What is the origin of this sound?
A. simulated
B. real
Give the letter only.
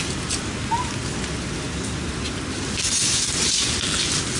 B